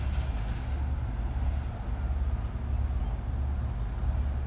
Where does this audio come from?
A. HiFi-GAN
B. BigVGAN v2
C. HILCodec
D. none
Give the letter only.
D